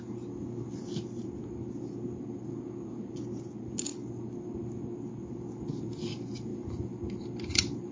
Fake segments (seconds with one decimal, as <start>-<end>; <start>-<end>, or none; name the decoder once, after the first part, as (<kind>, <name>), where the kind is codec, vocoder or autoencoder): none